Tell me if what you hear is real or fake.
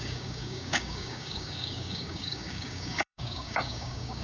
fake